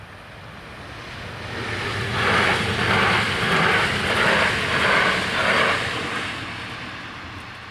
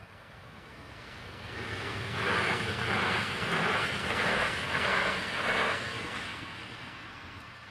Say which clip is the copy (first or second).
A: second